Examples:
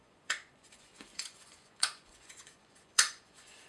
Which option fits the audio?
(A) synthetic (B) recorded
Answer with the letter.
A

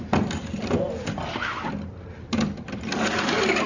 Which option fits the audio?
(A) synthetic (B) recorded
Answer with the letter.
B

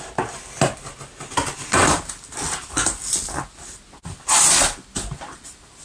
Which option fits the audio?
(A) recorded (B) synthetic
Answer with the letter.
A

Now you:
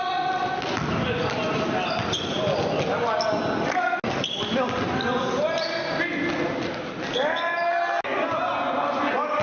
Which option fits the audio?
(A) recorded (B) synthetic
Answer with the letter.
A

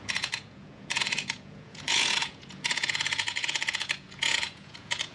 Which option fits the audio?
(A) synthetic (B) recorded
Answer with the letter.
A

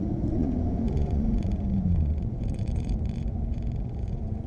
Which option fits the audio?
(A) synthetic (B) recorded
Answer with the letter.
A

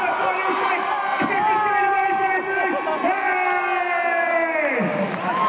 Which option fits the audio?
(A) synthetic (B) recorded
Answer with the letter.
B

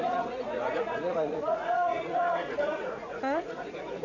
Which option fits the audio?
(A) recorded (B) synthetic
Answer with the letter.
B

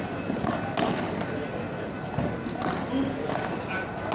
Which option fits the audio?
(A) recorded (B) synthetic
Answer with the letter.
A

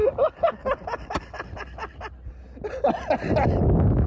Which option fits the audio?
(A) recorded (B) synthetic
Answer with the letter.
A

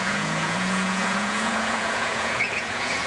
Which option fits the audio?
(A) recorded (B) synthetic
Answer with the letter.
B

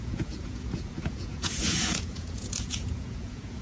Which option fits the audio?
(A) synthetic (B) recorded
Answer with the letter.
A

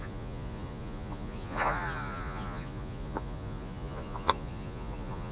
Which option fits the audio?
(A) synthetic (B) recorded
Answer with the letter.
A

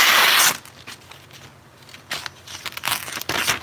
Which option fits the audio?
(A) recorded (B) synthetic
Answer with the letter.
A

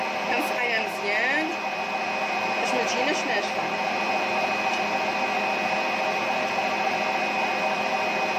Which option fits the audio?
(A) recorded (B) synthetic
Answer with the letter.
A